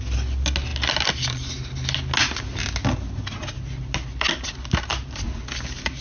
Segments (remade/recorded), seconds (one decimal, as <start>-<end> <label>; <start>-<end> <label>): 0.0-6.0 recorded